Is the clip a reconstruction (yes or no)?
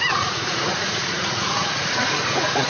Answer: yes